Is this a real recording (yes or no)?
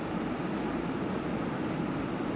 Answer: yes